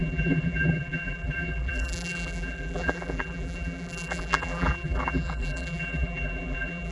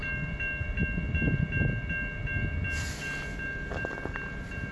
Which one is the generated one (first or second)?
first